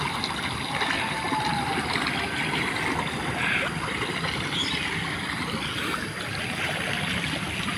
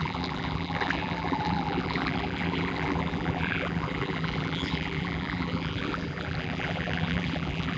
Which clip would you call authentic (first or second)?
first